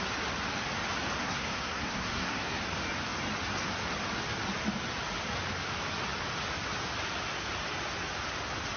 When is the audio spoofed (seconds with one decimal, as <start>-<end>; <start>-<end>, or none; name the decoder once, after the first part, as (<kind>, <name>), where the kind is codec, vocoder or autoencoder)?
1.2-2.6 (codec, SNAC)